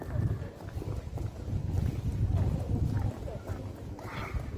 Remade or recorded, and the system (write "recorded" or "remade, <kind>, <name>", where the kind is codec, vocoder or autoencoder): recorded